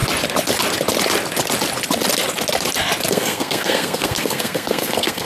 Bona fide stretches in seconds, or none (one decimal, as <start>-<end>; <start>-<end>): 0.0-3.1